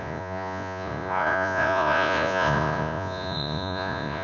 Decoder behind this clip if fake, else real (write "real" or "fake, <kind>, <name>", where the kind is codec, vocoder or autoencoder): fake, vocoder, Vocos